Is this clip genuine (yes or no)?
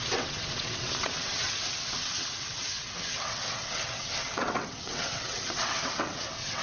no